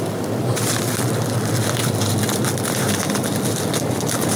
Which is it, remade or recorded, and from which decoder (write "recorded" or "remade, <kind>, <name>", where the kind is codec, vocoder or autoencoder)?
recorded